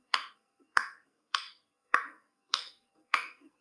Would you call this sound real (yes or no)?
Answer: no